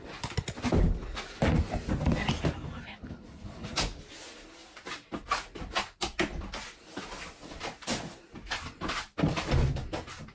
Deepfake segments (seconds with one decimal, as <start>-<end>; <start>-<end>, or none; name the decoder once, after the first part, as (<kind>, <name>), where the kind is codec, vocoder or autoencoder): none